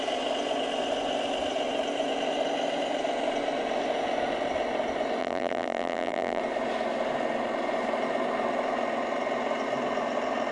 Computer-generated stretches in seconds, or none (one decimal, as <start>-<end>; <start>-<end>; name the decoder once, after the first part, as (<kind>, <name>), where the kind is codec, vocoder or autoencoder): 5.2-6.4 (vocoder, BigVGAN v2)